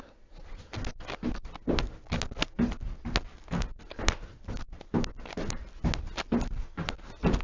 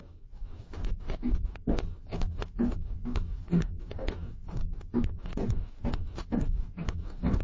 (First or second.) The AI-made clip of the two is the second